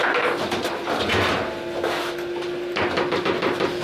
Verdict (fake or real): real